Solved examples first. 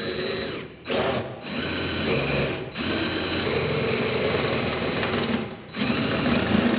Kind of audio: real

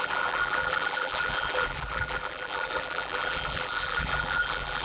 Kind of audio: fake